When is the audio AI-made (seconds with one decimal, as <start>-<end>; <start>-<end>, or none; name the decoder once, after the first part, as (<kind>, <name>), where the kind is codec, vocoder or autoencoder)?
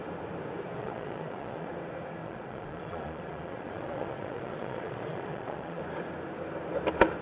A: 0.8-1.7 (vocoder, Vocos); 2.2-5.8